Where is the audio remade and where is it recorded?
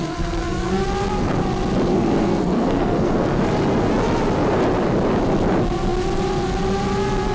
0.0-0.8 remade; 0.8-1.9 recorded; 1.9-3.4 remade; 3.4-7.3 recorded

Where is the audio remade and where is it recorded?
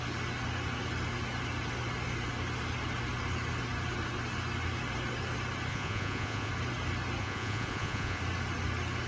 0.0-5.7 recorded; 5.7-6.5 remade; 6.5-7.2 recorded; 7.2-8.2 remade; 8.2-9.1 recorded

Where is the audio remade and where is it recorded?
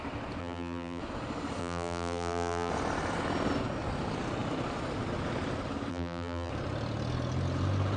0.0-0.4 recorded; 0.4-1.0 remade; 1.0-1.6 recorded; 1.6-2.7 remade; 2.7-5.9 recorded; 5.9-6.5 remade; 6.5-8.0 recorded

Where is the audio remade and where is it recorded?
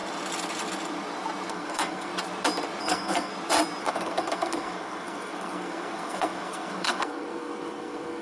0.0-1.5 recorded; 1.5-2.1 remade; 2.1-2.8 recorded; 2.8-3.3 remade; 3.3-3.8 recorded; 3.8-8.2 remade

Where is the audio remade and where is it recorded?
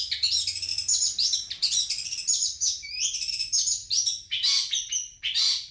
0.0-0.7 recorded; 0.7-3.3 remade; 3.3-3.8 recorded; 3.8-5.7 remade